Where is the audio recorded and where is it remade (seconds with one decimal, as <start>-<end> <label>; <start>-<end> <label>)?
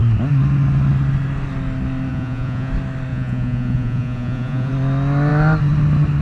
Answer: 0.0-2.1 recorded; 2.1-2.7 remade; 2.7-3.1 recorded; 3.1-4.7 remade; 4.7-6.2 recorded